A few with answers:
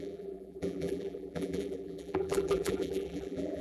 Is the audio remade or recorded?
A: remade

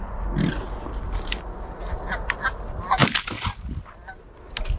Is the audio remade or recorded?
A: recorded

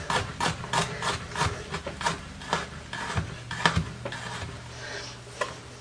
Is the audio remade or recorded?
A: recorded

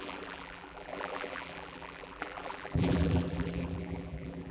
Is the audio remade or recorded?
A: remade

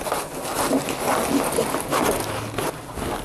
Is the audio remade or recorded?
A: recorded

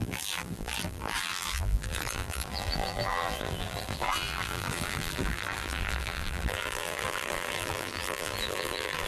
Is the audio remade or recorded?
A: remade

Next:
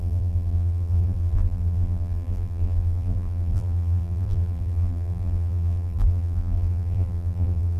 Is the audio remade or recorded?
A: remade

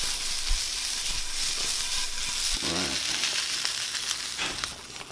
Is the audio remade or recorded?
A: recorded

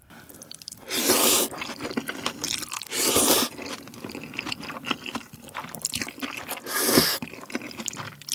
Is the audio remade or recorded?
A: remade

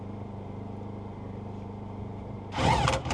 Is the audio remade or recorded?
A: remade